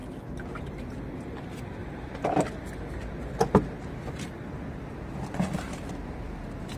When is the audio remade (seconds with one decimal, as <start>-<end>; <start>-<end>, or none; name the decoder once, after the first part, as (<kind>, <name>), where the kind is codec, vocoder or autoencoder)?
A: none